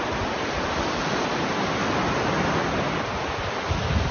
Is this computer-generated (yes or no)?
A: no